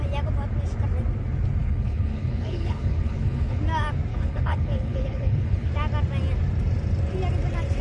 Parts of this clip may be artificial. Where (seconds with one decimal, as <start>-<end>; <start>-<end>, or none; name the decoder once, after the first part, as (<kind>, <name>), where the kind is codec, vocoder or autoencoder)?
1.6-3.6 (codec, HILCodec); 4.1-5.7